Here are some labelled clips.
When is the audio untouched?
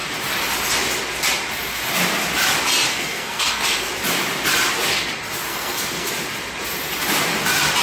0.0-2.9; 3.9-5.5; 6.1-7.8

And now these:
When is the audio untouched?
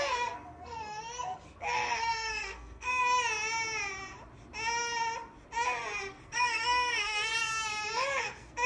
3.0-6.1; 7.3-8.2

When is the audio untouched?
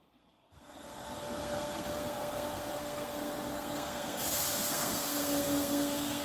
none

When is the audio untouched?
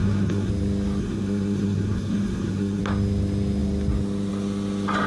0.5-1.0; 2.8-5.1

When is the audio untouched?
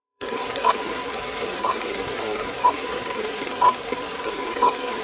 none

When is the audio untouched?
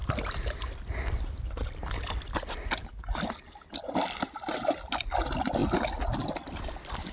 0.0-7.1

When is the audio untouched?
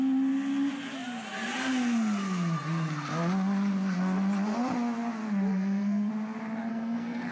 0.0-5.5; 6.1-6.7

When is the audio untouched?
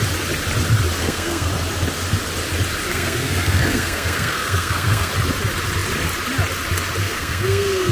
0.0-1.0; 1.5-2.9; 5.1-7.0